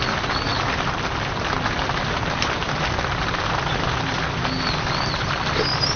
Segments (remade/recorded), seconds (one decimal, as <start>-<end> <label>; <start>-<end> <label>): 0.0-6.0 recorded